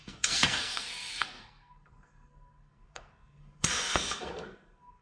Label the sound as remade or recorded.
remade